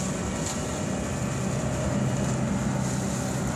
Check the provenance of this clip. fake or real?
real